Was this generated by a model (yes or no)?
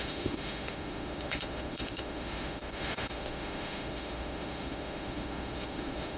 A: yes